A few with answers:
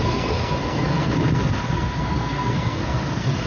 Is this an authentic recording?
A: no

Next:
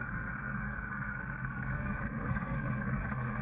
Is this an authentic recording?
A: no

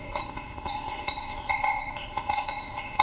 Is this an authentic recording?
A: no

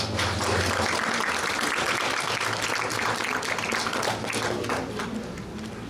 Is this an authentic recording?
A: yes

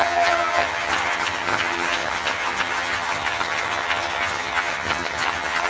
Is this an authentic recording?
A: no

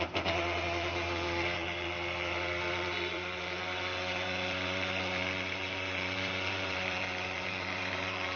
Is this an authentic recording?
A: no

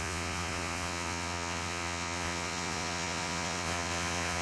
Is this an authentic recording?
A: no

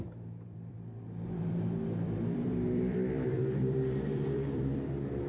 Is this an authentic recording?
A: no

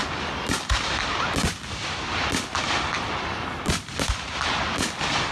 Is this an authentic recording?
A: yes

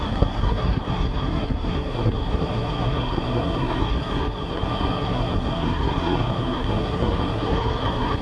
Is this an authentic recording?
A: no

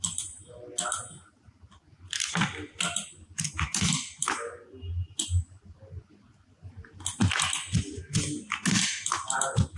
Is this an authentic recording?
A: yes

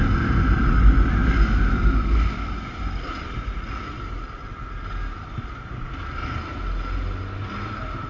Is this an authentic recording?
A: yes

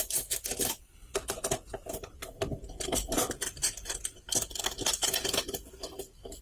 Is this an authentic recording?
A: yes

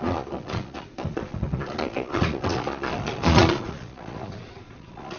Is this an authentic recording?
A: no